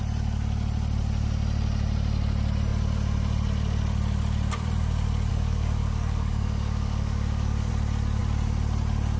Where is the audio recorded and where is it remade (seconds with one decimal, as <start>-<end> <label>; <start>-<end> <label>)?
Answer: 0.0-5.3 recorded; 5.3-7.7 remade; 7.7-9.2 recorded